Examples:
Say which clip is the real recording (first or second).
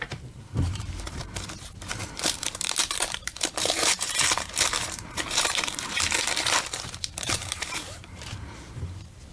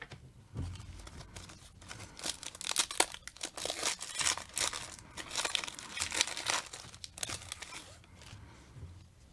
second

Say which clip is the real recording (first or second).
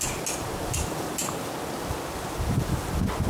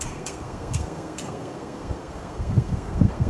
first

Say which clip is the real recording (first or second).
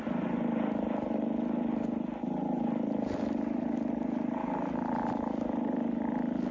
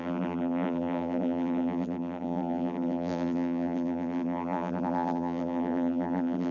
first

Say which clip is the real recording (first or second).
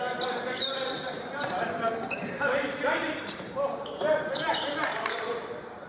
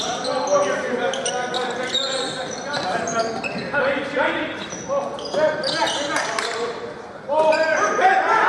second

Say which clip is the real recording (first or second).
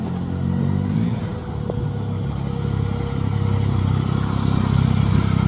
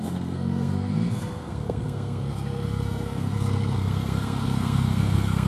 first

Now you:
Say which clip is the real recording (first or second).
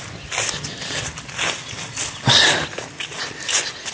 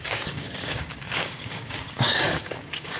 first